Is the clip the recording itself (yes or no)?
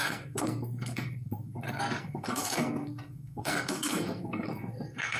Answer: no